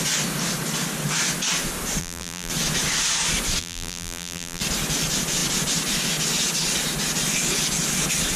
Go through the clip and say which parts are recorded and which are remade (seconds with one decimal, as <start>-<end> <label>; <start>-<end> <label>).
0.0-2.0 recorded; 2.0-2.5 remade; 2.5-3.6 recorded; 3.6-4.6 remade; 4.6-8.4 recorded